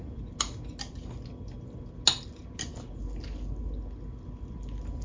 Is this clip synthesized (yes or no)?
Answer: no